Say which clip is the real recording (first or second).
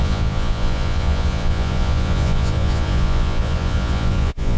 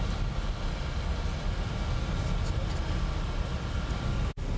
second